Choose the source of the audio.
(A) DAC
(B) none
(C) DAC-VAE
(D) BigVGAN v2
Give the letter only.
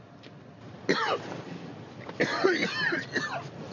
B